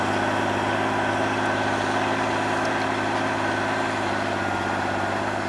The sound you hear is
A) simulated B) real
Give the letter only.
B